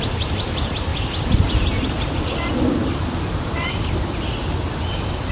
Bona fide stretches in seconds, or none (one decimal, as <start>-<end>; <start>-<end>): 0.0-5.3